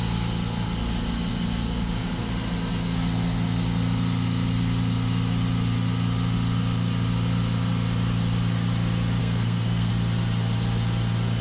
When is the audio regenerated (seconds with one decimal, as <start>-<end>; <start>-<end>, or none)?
9.2-9.9

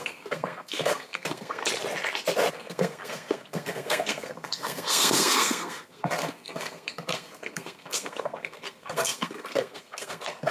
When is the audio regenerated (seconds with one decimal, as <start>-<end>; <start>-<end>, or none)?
0.0-1.6; 2.5-10.5